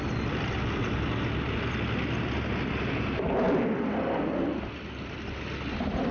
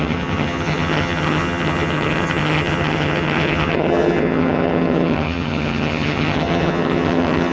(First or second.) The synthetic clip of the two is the second